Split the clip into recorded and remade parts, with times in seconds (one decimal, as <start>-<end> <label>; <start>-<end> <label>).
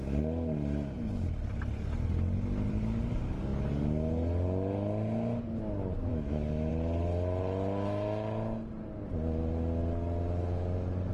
0.0-6.1 recorded; 6.1-6.7 remade; 6.7-11.1 recorded